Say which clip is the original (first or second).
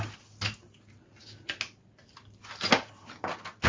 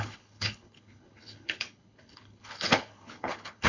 first